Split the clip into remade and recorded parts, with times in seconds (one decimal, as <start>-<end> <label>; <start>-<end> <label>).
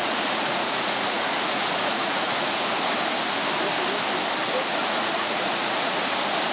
0.0-2.7 remade; 2.7-4.8 recorded; 4.8-6.0 remade; 6.0-6.5 recorded